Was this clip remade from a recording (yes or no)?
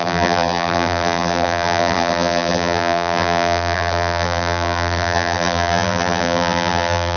yes